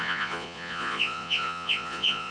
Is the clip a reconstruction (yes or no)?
yes